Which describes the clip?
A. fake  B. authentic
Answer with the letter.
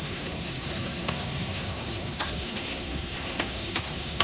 A